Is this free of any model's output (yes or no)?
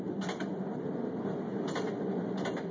yes